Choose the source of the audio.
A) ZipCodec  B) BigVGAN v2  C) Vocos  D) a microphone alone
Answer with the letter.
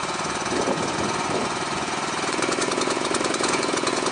C